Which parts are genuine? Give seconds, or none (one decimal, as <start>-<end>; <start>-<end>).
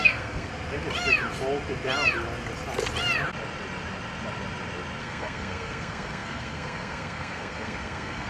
0.5-5.0